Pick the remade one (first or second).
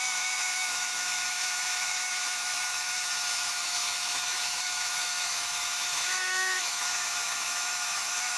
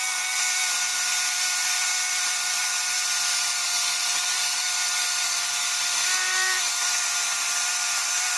first